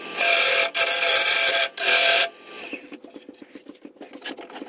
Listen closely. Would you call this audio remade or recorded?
recorded